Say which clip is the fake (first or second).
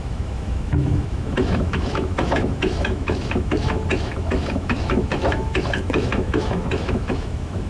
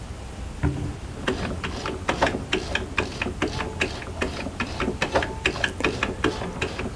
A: first